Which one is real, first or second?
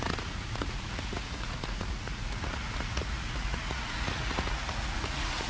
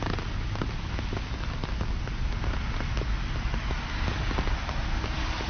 second